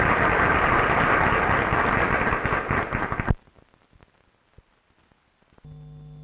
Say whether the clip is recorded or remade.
recorded